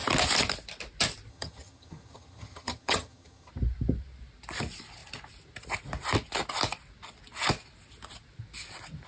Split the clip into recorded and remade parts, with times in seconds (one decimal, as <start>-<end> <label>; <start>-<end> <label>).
0.0-1.3 recorded; 1.3-3.5 remade; 3.5-9.1 recorded